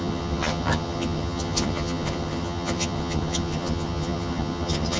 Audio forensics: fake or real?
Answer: fake